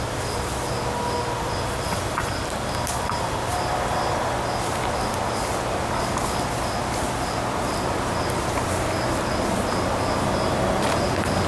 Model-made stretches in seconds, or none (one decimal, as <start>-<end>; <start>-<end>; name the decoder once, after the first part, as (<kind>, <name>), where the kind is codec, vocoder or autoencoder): 3.5-4.0 (vocoder, BigVGAN v2)